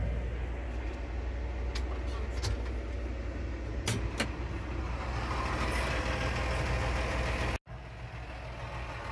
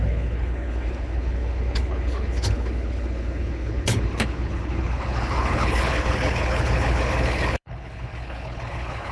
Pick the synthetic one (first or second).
second